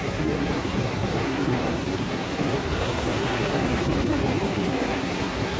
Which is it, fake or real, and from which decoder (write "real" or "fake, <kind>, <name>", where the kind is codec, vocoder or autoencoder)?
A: fake, codec, SNAC